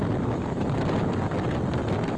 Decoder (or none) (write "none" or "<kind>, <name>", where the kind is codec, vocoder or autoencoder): none